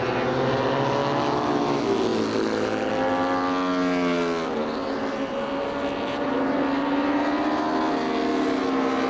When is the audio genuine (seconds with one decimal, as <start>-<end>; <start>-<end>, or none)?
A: 0.0-1.0; 1.6-9.1